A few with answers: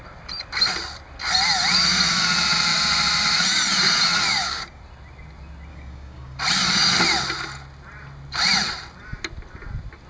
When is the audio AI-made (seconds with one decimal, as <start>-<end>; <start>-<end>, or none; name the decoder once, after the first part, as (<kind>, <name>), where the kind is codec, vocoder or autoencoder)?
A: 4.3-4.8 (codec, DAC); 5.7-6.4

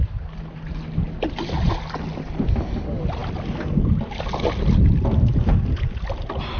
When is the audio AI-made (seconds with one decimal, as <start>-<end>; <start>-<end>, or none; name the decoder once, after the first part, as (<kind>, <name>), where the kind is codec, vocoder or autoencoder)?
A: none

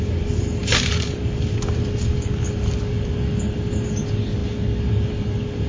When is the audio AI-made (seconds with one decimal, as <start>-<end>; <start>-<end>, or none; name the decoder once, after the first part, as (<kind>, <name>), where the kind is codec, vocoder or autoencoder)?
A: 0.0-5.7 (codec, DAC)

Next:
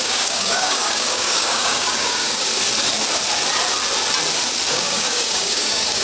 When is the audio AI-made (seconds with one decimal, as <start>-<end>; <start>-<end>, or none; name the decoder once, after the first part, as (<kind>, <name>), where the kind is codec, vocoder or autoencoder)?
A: 0.0-2.5 (codec, DAC); 4.7-6.0

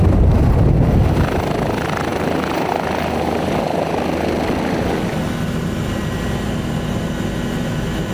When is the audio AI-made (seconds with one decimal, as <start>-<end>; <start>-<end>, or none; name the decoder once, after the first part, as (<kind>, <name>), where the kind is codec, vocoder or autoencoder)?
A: none

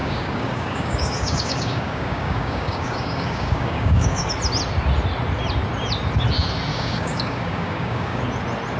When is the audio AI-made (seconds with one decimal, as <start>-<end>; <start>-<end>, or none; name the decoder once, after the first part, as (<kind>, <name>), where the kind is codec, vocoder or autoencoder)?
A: 0.0-4.3 (codec, DAC); 6.7-8.2

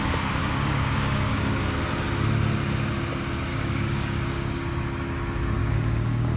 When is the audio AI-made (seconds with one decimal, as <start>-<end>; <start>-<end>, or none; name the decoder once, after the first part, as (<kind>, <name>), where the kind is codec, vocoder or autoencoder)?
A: 0.4-1.6 (codec, DAC); 3.5-4.6; 5.6-6.4

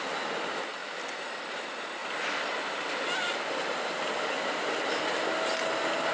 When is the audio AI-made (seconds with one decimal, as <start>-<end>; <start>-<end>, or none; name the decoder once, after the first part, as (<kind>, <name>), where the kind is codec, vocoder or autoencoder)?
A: none